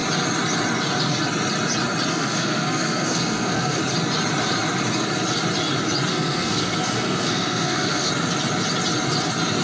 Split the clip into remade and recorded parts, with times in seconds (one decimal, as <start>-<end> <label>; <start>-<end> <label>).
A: 0.0-2.1 recorded; 2.1-3.8 remade; 3.8-6.1 recorded; 6.1-8.1 remade; 8.1-9.6 recorded